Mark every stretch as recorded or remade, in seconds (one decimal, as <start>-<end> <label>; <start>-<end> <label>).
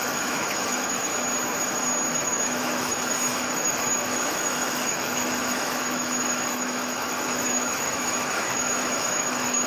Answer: 0.0-1.1 remade; 1.1-2.1 recorded; 2.1-9.7 remade